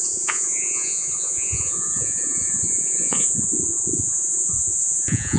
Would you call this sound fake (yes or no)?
yes